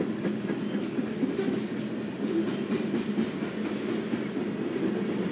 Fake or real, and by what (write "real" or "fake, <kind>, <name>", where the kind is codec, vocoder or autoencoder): real